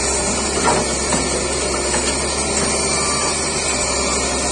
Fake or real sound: real